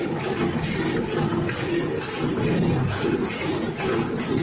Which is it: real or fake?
real